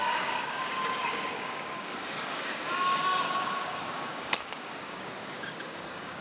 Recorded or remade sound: remade